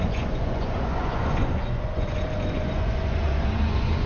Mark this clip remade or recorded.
remade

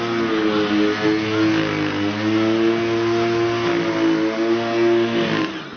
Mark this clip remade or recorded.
recorded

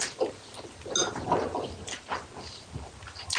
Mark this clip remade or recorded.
recorded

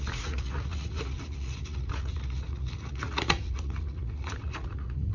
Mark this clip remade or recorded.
remade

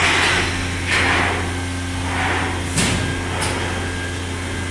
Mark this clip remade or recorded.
recorded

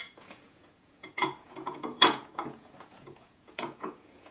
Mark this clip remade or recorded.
remade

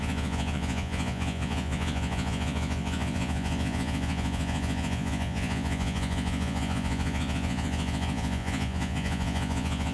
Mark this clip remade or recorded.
remade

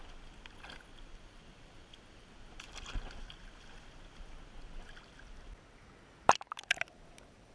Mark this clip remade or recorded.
recorded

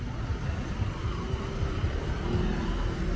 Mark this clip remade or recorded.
recorded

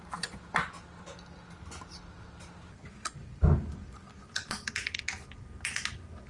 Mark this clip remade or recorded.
recorded